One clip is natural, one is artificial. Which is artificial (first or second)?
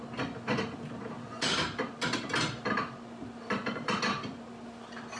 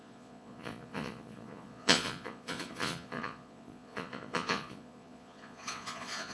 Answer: second